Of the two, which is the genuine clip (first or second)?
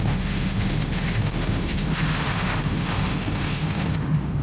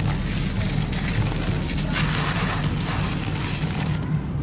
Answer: second